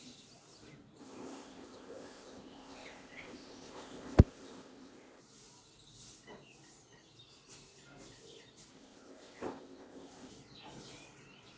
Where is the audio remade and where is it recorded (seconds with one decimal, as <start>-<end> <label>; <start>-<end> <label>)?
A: 0.0-1.0 recorded; 1.0-5.2 remade; 5.2-8.7 recorded; 8.7-10.3 remade; 10.3-11.6 recorded